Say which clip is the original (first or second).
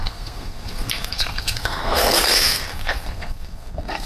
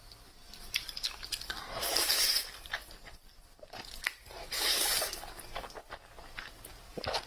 second